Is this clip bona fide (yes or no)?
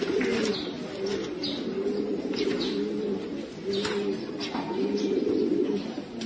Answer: yes